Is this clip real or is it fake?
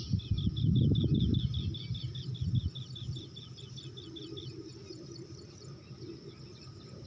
real